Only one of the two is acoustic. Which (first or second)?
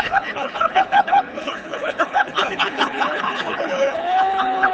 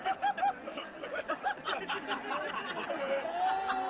second